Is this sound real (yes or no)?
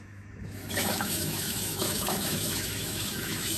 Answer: no